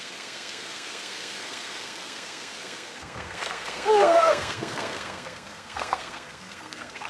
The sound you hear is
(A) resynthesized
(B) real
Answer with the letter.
A